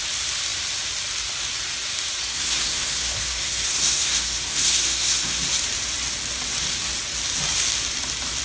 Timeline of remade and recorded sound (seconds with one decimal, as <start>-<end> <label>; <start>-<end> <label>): 0.0-2.3 recorded; 2.3-5.4 remade; 5.4-8.4 recorded